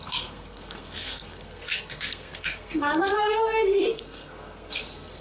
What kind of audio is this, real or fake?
fake